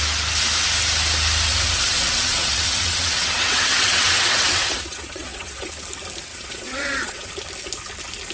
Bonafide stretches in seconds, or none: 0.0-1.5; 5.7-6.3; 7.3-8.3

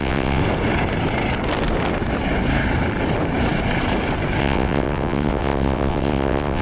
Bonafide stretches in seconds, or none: 0.4-4.4

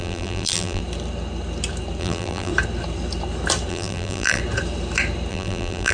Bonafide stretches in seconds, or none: 0.8-2.0; 2.5-3.7; 4.4-5.3